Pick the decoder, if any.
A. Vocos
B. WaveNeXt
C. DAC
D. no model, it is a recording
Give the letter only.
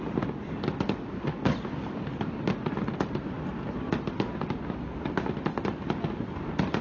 D